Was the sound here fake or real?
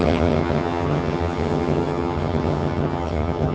fake